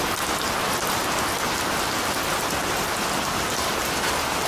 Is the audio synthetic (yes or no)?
no